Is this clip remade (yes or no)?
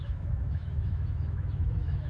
yes